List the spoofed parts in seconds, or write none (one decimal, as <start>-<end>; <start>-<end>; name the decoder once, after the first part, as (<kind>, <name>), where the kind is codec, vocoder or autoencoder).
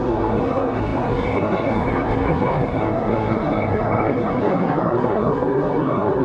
0.0-6.2 (codec, SNAC)